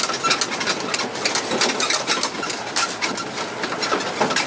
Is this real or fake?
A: real